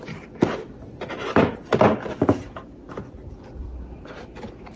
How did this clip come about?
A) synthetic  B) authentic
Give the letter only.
B